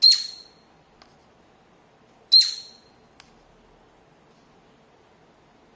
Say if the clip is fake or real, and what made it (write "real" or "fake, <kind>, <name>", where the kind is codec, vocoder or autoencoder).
real